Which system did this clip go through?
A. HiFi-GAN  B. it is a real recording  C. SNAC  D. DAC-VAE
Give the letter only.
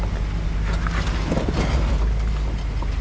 B